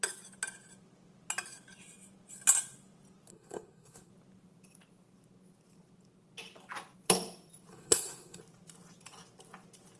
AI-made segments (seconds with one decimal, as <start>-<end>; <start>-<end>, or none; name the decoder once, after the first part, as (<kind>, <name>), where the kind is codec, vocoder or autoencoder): 3.3-4.1 (codec, SNAC); 7.7-8.4